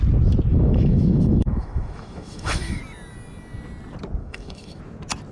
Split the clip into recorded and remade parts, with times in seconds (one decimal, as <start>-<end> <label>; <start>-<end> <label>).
0.0-0.5 recorded; 0.5-2.8 remade; 2.8-4.2 recorded; 4.2-4.8 remade; 4.8-5.3 recorded